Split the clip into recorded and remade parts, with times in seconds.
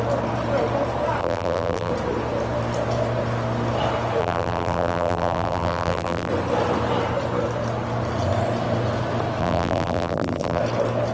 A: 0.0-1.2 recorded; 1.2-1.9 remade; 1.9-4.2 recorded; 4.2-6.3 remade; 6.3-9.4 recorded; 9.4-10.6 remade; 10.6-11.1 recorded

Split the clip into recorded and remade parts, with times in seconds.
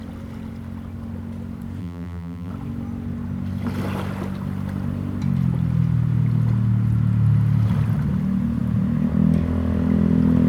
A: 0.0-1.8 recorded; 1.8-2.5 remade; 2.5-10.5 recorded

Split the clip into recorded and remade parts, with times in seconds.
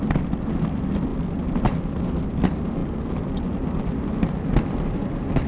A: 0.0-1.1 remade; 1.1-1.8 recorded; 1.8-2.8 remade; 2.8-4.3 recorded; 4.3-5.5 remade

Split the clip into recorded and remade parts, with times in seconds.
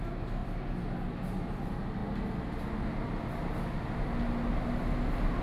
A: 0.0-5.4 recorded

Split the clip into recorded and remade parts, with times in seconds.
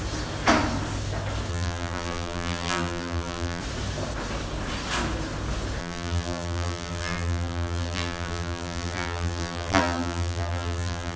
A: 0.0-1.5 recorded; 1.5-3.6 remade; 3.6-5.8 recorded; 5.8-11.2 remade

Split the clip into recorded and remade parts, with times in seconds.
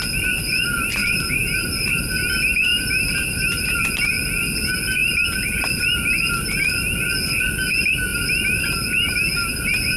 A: 0.0-1.0 recorded; 1.0-2.0 remade; 2.0-2.7 recorded; 2.7-3.8 remade; 3.8-8.1 recorded; 8.1-8.6 remade; 8.6-10.0 recorded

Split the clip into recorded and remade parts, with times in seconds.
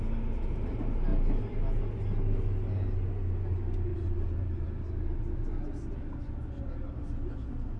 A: 0.0-3.9 recorded; 3.9-4.7 remade; 4.7-7.8 recorded